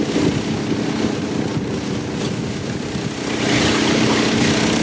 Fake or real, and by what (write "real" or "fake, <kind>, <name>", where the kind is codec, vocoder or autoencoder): real